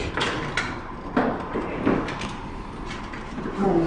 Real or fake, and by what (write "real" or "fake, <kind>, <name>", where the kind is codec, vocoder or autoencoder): real